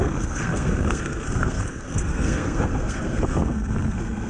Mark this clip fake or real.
fake